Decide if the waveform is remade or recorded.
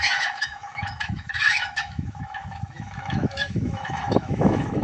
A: remade